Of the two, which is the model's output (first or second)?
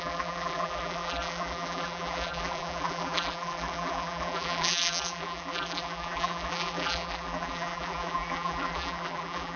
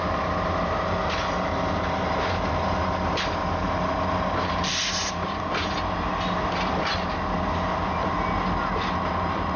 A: first